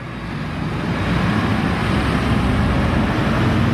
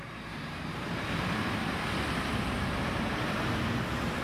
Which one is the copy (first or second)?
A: second